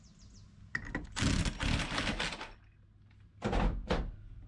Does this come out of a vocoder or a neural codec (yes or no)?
no